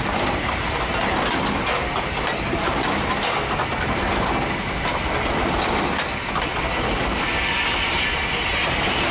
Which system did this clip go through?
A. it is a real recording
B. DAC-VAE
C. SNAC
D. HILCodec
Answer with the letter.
A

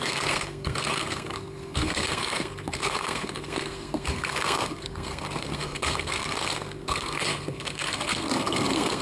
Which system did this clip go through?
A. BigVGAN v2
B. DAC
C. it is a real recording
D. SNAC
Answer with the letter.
D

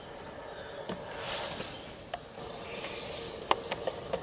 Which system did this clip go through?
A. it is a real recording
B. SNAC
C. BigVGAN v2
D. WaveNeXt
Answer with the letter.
A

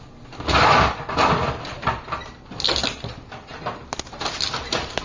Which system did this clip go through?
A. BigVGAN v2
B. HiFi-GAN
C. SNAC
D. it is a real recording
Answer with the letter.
D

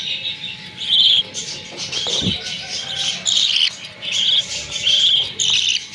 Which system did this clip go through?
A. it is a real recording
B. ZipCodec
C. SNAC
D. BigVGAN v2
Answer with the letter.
A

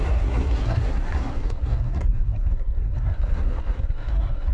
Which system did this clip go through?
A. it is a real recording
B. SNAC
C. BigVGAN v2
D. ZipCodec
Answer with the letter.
B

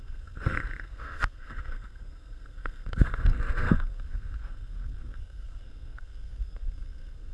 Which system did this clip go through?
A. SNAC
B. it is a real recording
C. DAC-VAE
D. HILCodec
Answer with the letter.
A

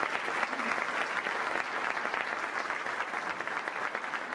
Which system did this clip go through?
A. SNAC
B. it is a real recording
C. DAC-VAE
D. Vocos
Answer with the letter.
B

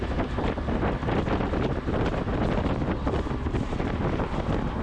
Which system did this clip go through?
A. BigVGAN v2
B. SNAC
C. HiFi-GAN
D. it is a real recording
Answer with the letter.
D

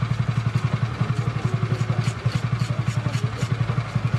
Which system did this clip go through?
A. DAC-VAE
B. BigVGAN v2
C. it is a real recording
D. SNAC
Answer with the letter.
C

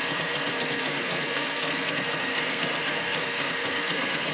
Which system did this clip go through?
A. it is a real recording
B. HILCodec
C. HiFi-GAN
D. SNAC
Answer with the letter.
D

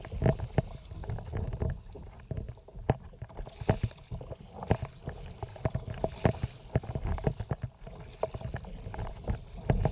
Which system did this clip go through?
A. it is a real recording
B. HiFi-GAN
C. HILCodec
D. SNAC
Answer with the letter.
A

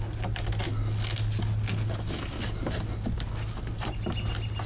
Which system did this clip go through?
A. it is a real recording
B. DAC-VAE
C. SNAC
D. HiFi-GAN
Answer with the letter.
A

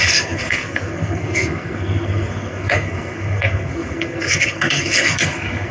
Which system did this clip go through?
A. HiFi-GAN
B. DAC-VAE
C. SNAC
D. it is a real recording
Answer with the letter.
C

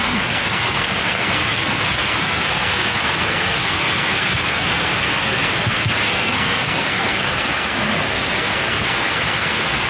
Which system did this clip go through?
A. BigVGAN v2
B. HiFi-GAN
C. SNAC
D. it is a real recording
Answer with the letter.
C